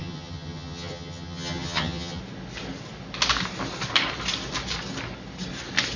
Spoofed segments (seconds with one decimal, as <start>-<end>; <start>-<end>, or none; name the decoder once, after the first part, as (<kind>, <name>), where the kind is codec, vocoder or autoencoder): 0.0-2.2 (vocoder, HiFi-GAN)